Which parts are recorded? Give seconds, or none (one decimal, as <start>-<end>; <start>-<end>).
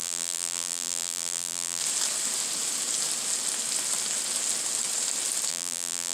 1.8-5.5